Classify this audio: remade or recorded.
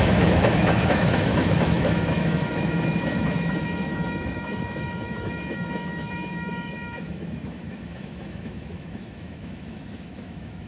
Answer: remade